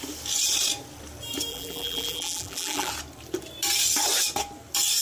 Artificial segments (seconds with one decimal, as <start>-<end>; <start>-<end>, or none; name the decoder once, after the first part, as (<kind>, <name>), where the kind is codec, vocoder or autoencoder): 1.5-2.9 (vocoder, BigVGAN v2)